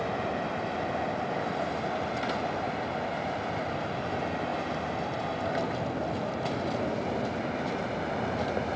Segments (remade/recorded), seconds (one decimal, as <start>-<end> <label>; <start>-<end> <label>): 0.0-8.8 recorded